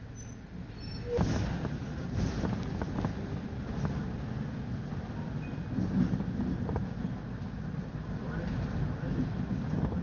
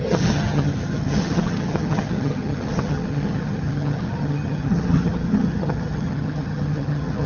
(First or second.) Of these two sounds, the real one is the first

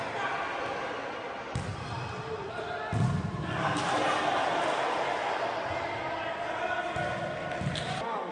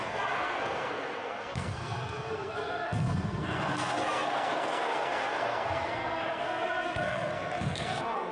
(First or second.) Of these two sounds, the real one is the first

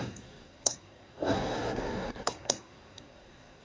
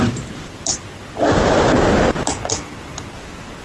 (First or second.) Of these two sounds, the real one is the second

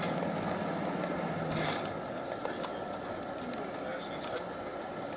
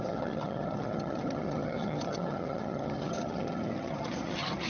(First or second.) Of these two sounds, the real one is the first